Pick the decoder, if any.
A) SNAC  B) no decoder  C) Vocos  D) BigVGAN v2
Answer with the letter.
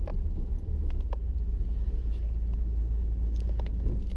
B